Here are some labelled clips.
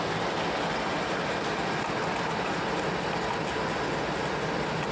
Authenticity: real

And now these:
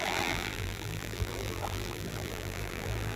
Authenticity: fake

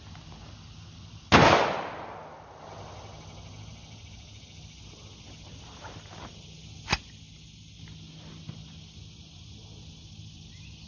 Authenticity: real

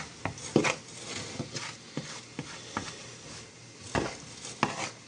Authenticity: real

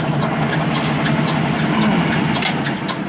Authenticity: real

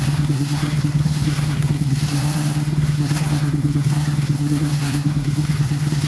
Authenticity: fake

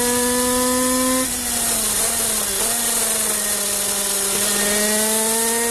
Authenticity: real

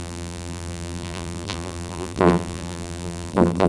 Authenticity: fake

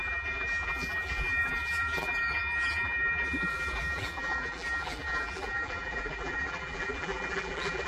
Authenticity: fake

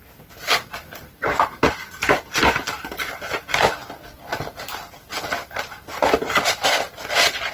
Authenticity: real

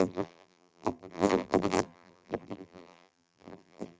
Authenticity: fake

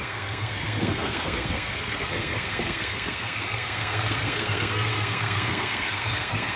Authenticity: fake